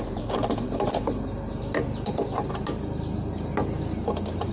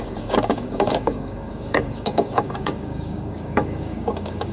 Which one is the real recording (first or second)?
first